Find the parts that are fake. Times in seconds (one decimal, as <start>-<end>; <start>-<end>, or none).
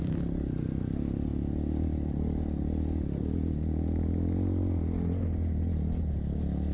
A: none